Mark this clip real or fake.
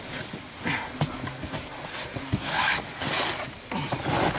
real